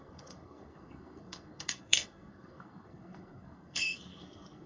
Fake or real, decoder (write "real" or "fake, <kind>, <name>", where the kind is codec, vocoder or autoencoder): fake, codec, SNAC